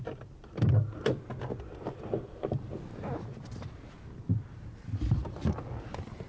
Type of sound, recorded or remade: recorded